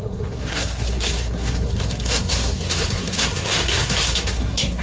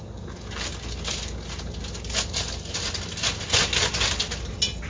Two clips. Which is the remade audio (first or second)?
first